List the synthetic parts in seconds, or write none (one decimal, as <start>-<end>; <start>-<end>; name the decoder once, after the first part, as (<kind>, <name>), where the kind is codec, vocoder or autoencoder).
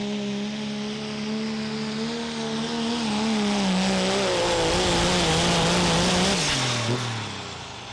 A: none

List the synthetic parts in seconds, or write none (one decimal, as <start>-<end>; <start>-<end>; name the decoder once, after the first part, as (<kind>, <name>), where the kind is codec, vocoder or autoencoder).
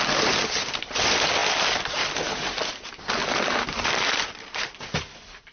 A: none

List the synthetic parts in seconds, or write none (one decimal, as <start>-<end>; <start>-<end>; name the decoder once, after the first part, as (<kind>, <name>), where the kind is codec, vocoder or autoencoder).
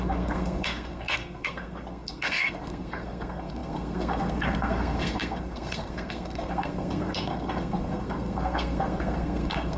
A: 0.0-9.8 (codec, SNAC)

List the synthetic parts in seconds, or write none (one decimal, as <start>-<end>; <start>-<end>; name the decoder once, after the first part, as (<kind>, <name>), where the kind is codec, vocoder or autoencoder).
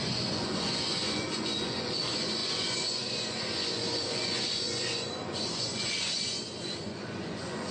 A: 0.0-7.7 (vocoder, Vocos)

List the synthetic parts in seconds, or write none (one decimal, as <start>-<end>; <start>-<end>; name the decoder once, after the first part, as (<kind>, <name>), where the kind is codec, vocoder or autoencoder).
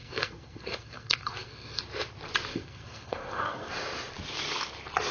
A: 0.0-1.8 (codec, SNAC); 2.5-3.7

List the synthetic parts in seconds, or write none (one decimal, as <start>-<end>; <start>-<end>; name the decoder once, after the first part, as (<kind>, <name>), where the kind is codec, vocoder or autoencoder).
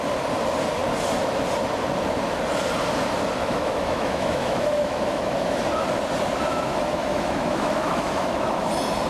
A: 3.4-5.6 (autoencoder, DAC-VAE); 6.5-8.7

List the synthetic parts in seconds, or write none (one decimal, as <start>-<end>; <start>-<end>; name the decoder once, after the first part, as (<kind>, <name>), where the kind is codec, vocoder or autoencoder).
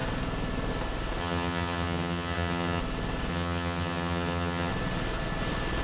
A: 1.2-2.8 (vocoder, HiFi-GAN); 3.3-4.7